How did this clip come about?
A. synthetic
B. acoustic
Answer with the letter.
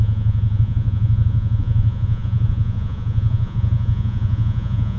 A